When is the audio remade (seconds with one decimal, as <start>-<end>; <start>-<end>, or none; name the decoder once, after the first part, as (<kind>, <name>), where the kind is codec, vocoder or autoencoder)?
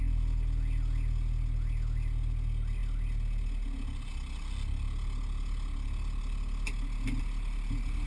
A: none